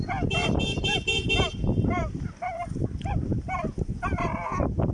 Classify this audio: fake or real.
fake